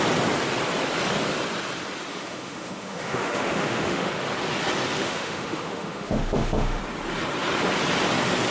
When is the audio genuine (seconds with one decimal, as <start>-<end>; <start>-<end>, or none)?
0.0-2.1; 4.1-5.0; 6.8-8.5